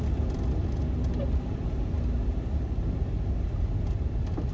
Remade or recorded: recorded